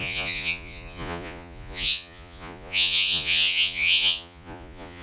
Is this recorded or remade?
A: remade